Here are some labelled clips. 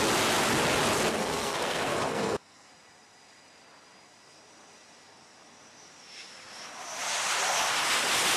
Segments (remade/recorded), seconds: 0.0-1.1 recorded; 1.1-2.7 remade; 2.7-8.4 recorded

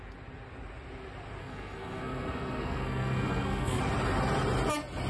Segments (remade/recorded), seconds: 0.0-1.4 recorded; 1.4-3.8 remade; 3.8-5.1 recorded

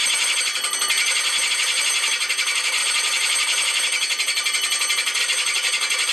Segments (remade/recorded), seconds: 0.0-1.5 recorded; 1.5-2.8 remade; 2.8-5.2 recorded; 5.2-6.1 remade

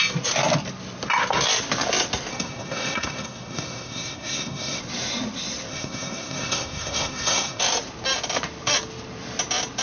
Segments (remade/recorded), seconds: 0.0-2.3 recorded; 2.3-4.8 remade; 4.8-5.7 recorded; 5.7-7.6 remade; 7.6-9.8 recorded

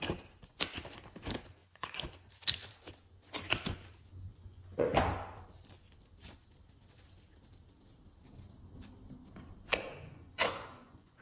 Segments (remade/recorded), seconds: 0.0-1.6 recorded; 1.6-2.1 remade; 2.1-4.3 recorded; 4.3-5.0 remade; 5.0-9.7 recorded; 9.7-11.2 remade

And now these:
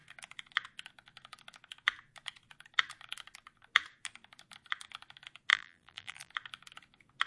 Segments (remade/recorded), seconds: 0.0-5.5 recorded; 5.5-6.3 remade; 6.3-7.3 recorded

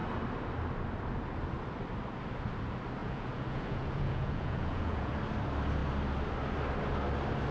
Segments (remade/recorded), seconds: 0.0-3.0 recorded; 3.0-5.1 remade; 5.1-7.5 recorded